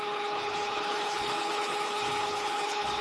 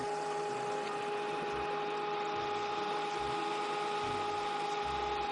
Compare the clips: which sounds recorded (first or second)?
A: second